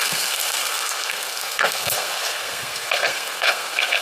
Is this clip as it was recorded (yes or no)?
no